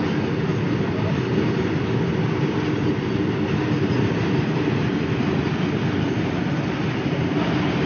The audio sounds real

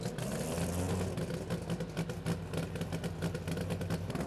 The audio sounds real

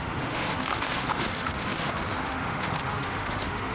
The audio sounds fake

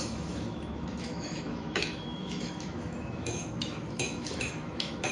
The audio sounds fake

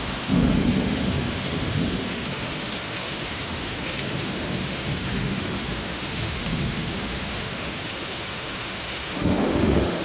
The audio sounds fake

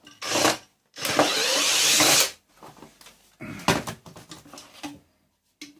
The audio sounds real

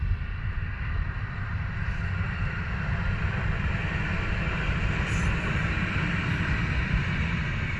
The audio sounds real